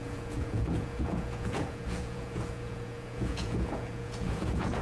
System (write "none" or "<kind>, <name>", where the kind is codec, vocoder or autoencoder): vocoder, Vocos